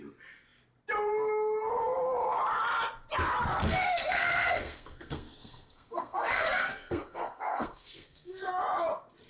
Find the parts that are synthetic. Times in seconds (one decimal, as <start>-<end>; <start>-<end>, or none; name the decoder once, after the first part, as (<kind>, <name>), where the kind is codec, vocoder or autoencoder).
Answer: 3.6-8.5 (codec, SNAC)